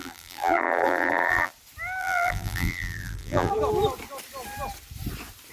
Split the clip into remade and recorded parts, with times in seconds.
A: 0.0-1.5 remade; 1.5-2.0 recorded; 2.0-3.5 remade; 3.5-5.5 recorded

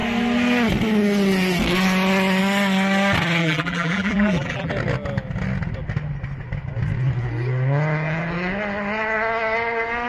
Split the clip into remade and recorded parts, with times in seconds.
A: 0.0-3.4 recorded; 3.4-4.7 remade; 4.7-10.1 recorded

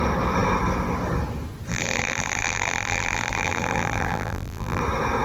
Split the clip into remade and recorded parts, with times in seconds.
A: 0.0-1.7 recorded; 1.7-4.8 remade; 4.8-5.2 recorded

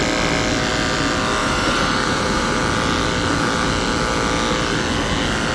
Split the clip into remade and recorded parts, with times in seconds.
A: 0.0-1.4 recorded; 1.4-2.6 remade; 2.6-5.5 recorded